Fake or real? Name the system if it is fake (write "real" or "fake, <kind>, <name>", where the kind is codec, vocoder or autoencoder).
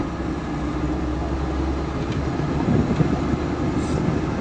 real